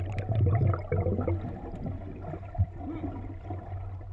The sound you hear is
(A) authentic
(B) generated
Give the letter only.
A